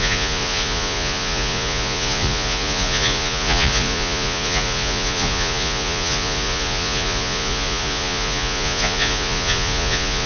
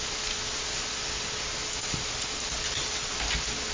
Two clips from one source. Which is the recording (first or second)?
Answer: second